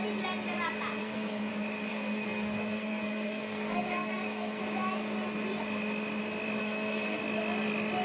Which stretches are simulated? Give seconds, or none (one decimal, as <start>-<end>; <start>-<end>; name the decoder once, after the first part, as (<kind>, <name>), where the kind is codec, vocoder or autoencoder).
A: 1.0-1.5 (codec, SNAC); 1.9-4.6; 6.6-7.2